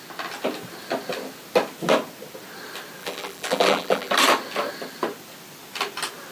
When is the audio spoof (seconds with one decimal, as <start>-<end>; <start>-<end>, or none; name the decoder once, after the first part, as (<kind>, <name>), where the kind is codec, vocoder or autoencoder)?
3.0-4.1 (vocoder, BigVGAN v2)